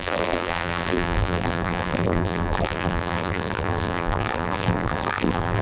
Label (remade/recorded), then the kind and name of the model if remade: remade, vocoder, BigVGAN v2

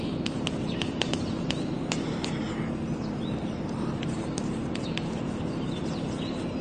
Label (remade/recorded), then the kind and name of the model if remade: remade, vocoder, BigVGAN v2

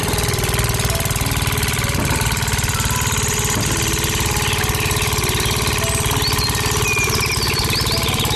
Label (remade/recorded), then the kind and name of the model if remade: recorded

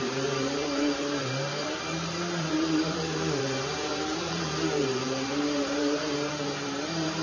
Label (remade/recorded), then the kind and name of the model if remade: remade, vocoder, BigVGAN v2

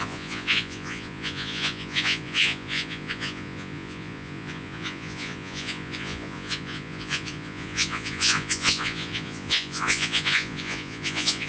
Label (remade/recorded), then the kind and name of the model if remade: remade, vocoder, Vocos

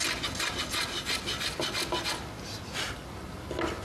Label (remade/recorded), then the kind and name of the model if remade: recorded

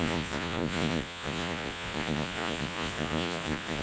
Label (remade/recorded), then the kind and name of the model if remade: remade, vocoder, Vocos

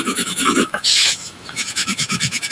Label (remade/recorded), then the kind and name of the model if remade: remade, autoencoder, DAC-VAE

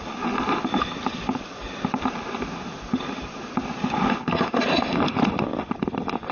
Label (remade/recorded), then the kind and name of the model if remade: remade, vocoder, BigVGAN v2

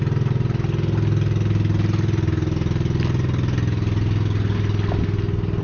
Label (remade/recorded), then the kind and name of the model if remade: recorded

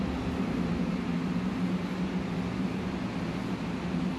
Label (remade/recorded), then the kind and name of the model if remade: recorded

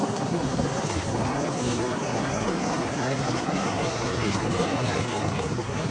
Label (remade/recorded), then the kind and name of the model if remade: remade, codec, SNAC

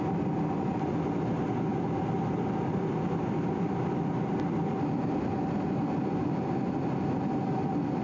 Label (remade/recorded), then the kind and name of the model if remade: recorded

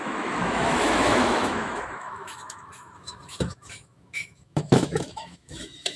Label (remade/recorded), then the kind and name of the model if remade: remade, autoencoder, DAC-VAE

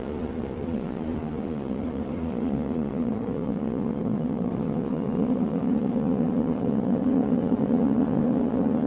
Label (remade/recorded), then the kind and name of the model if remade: remade, vocoder, Vocos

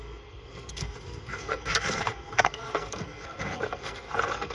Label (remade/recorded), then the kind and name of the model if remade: remade, codec, SNAC